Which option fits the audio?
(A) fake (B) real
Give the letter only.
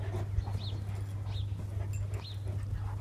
B